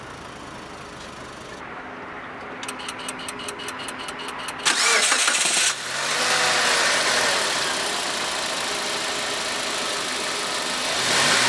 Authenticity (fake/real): real